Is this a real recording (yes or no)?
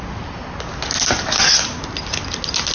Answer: yes